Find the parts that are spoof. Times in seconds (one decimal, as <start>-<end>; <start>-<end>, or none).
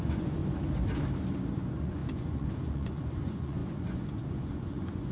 0.0-0.4; 1.5-5.1